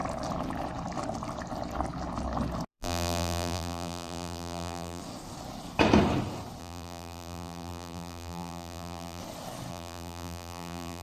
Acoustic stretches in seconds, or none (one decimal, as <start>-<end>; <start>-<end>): 0.0-2.7; 5.0-6.6; 9.2-9.7